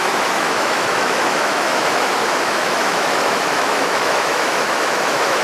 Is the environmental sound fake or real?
fake